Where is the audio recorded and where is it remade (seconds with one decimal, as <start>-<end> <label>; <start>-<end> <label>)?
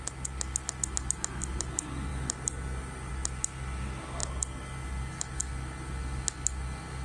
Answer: 0.0-2.1 recorded; 2.1-3.1 remade; 3.1-7.0 recorded